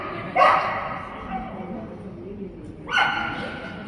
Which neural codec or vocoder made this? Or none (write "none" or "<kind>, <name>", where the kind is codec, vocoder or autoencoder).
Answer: none